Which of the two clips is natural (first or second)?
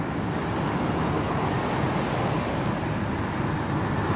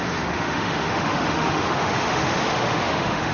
first